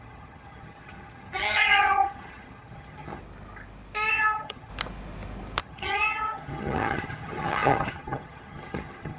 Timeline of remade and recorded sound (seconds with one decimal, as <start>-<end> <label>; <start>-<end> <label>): 0.0-3.2 remade; 3.2-4.1 recorded; 4.1-4.7 remade; 4.7-5.6 recorded; 5.6-9.2 remade